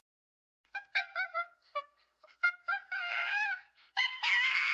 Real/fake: fake